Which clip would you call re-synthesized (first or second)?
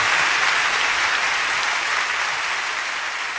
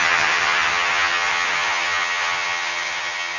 second